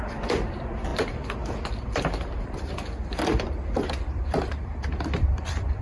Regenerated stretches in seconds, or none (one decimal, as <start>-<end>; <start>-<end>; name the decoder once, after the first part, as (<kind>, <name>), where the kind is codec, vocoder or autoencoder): 0.0-5.8 (vocoder, BigVGAN v2)